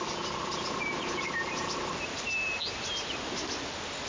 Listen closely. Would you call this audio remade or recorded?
recorded